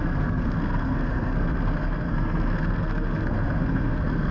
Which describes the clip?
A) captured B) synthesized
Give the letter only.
B